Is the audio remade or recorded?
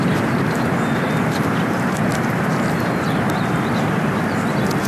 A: recorded